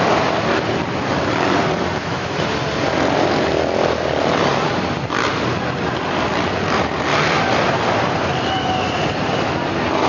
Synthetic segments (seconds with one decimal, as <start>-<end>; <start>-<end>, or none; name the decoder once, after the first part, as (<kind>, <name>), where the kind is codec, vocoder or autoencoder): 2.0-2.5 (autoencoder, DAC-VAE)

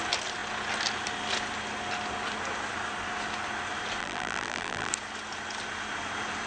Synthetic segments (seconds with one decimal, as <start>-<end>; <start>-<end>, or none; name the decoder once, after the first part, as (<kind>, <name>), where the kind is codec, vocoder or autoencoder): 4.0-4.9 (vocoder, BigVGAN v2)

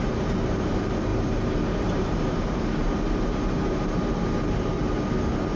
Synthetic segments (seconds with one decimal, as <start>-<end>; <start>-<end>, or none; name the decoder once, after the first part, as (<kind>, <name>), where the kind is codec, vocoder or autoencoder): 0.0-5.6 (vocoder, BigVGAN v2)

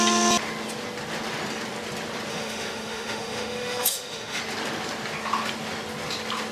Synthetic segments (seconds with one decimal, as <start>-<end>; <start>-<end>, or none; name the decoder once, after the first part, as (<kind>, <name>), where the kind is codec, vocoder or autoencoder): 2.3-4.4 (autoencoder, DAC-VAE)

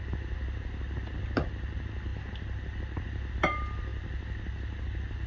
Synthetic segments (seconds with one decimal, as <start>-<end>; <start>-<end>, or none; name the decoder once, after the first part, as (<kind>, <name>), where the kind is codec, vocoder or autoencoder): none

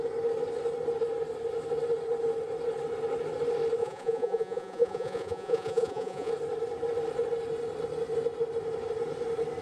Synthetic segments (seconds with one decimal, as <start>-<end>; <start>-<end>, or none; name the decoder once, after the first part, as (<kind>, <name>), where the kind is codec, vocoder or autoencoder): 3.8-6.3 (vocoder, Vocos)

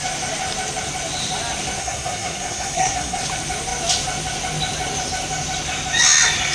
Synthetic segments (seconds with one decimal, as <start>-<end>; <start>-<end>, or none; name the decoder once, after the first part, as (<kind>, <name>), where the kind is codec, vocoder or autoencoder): 1.8-3.2 (codec, SNAC)